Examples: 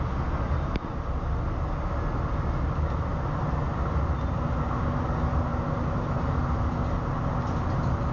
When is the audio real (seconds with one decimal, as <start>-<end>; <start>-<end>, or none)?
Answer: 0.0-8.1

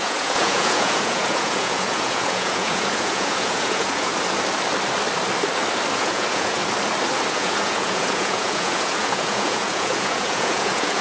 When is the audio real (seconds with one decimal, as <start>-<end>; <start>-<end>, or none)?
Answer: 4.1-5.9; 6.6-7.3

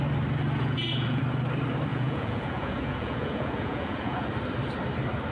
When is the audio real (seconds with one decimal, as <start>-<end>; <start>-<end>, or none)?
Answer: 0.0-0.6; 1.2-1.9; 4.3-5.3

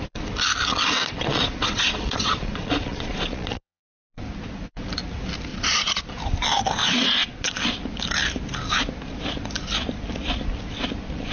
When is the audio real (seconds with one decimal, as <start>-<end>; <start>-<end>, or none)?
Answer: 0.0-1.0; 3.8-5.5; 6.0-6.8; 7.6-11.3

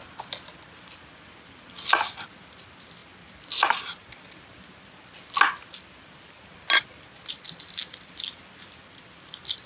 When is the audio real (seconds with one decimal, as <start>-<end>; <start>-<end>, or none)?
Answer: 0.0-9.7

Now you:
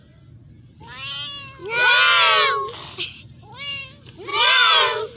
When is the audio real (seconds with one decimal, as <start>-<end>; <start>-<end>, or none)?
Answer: 0.0-4.3

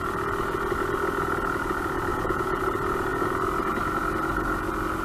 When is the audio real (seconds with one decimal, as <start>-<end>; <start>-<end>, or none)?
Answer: 0.0-2.1; 2.6-5.0

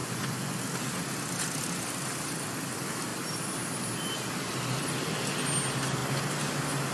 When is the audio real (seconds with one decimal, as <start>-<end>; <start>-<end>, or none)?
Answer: 0.6-6.9